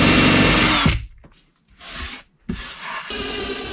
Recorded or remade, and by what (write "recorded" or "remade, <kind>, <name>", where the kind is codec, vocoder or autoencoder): recorded